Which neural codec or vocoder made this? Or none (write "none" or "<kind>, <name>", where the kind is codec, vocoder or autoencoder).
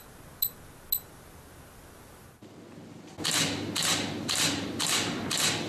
none